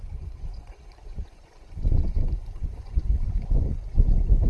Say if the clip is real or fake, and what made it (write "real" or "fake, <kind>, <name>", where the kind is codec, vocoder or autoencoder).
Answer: fake, vocoder, Vocos